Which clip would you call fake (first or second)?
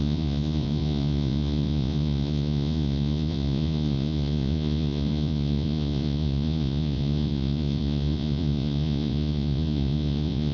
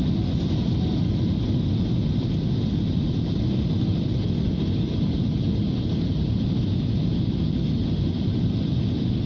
first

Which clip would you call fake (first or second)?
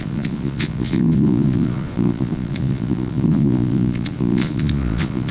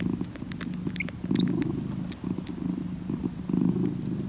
first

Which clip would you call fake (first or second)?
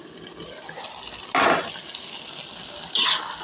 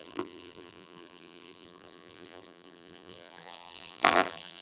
second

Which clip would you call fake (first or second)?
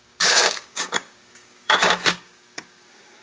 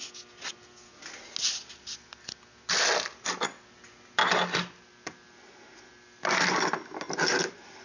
first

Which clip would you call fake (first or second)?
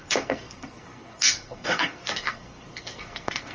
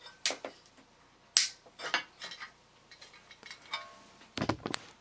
first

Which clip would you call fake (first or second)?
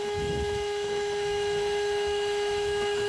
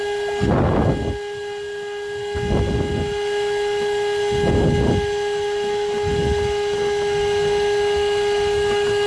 first